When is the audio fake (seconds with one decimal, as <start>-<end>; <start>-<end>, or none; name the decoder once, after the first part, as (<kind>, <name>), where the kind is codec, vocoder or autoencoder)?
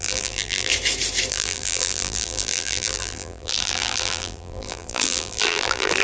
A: 0.0-0.7 (vocoder, BigVGAN v2); 1.3-6.0